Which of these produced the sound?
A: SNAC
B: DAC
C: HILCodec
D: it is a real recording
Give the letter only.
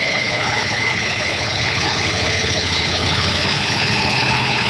C